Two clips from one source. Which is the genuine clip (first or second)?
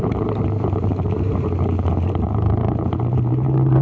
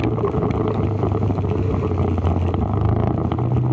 second